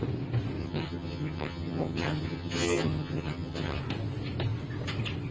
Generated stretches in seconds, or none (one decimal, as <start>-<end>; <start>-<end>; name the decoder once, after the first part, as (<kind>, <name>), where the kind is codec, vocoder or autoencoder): 0.6-3.8 (vocoder, HiFi-GAN)